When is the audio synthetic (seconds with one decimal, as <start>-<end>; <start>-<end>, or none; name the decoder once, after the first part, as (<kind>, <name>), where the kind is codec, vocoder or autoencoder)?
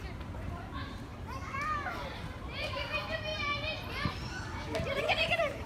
0.0-1.1 (vocoder, BigVGAN v2); 2.4-3.3; 5.0-5.7